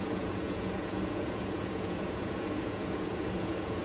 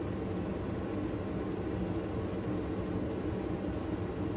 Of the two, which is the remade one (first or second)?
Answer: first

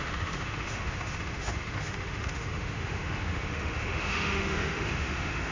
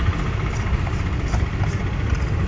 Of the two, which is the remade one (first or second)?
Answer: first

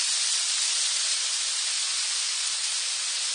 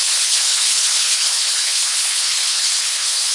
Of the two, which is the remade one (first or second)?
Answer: second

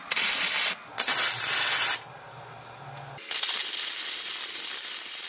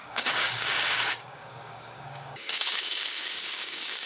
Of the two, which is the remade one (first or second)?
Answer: second